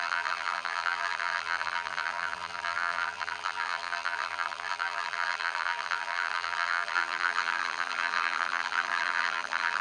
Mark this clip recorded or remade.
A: remade